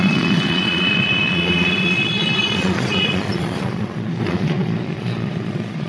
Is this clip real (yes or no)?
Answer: no